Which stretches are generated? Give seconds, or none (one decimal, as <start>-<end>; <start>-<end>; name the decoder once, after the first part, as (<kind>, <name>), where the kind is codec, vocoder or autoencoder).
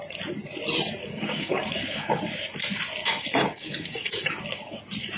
1.0-2.2 (codec, DAC); 3.0-4.8